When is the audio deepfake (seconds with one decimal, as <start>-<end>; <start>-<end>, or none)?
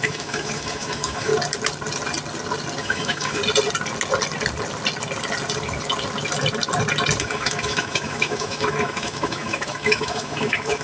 0.0-1.3; 2.8-3.4; 7.2-10.8